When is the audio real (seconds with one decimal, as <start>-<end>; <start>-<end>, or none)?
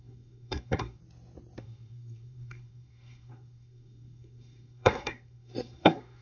1.0-1.6